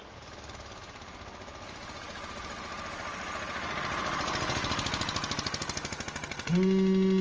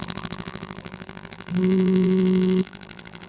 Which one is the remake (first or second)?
second